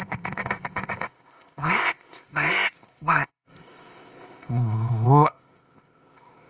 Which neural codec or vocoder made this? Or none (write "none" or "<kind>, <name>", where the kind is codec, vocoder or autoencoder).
codec, ZipCodec